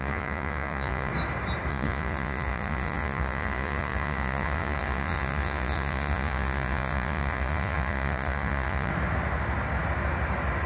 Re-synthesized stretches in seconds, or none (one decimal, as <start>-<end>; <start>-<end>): 0.0-1.1; 1.7-8.9